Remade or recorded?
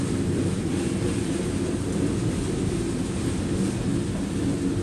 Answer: recorded